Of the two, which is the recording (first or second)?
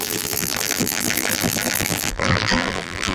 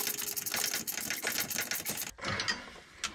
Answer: second